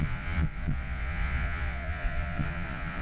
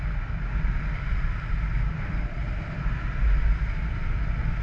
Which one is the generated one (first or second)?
first